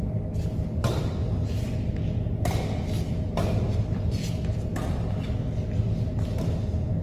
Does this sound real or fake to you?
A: real